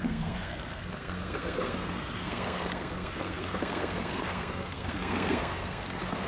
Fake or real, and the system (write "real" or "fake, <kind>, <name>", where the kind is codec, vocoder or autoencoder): fake, codec, SNAC